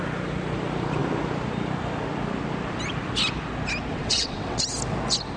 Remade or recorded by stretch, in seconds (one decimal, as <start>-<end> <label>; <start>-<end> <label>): 0.0-3.9 recorded; 3.9-4.6 remade; 4.6-5.4 recorded